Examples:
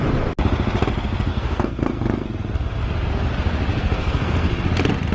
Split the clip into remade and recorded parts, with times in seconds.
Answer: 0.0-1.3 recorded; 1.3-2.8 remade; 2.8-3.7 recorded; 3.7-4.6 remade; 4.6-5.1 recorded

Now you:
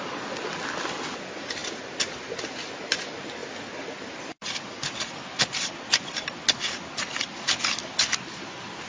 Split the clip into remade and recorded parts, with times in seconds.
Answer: 0.0-8.9 recorded

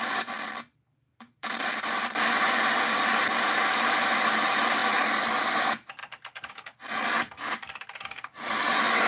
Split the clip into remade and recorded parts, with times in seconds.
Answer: 0.0-9.1 recorded

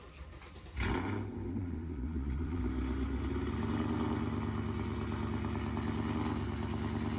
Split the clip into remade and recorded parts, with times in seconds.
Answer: 0.0-1.5 recorded; 1.5-2.6 remade; 2.6-7.2 recorded